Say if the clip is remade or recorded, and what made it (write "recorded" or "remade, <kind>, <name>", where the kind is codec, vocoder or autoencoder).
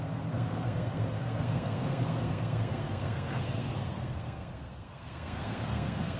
remade, codec, SNAC